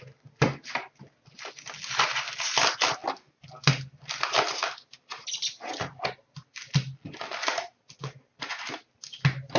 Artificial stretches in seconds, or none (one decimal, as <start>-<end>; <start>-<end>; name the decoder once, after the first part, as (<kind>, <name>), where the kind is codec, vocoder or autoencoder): none